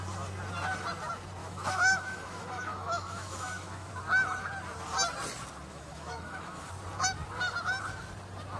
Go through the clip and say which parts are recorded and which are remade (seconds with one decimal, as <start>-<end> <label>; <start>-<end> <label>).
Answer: 0.0-1.4 recorded; 1.4-3.9 remade; 3.9-5.7 recorded; 5.7-6.7 remade; 6.7-8.6 recorded